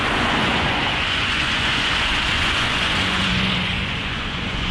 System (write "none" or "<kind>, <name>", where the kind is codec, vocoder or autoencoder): vocoder, Vocos